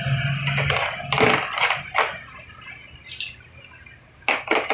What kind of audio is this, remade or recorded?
recorded